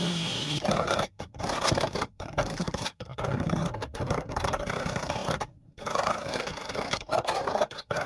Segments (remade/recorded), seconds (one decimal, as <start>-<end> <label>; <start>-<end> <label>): 0.0-8.1 remade